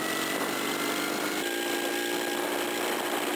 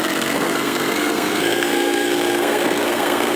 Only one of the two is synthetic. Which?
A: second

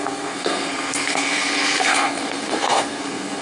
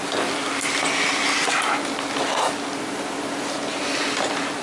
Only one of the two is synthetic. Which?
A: first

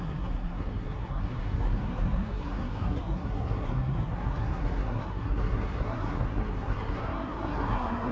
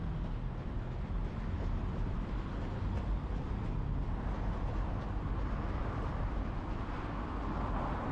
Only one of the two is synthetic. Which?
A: first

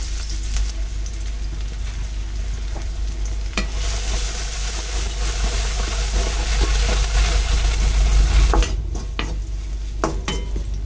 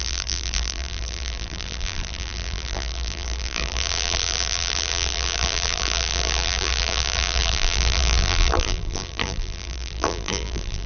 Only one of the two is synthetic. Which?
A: second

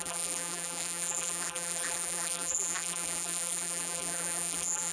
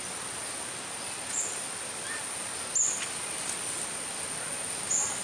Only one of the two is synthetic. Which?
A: first